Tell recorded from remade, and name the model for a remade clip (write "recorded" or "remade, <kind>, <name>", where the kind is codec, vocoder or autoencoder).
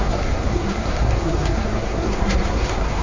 remade, codec, SNAC